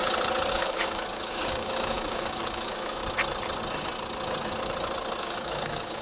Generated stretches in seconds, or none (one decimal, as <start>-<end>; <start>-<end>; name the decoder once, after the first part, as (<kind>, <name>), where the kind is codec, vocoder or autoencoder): 0.5-3.0 (codec, DAC); 5.2-6.0